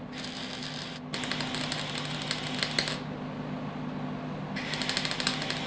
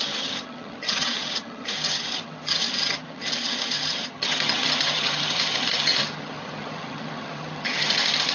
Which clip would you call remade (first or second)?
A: second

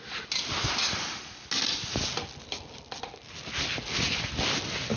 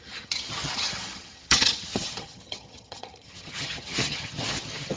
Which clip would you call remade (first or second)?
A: second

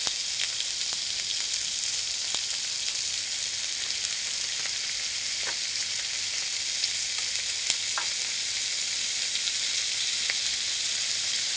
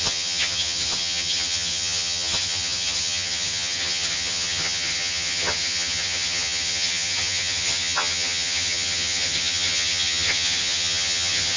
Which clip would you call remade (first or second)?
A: second